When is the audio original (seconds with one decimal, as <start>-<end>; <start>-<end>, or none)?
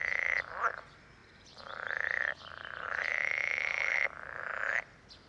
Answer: 0.0-1.2; 3.0-5.3